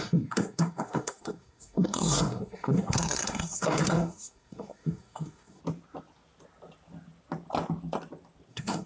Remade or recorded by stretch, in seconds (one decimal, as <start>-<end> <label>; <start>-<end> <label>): 0.0-5.6 remade; 5.6-8.5 recorded; 8.5-8.9 remade